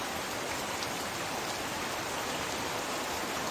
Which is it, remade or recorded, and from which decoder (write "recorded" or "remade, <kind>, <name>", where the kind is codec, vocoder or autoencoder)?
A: recorded